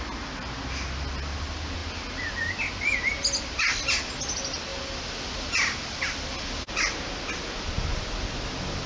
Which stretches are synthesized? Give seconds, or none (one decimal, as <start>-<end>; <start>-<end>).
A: none

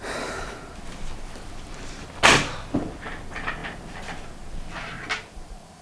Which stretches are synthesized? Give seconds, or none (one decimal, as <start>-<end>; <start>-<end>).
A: none

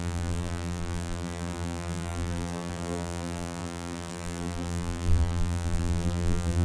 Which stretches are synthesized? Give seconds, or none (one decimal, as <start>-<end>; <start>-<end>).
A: 0.0-6.6